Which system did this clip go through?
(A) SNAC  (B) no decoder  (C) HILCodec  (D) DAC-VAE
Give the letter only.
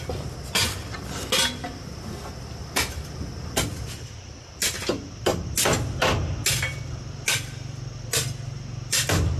B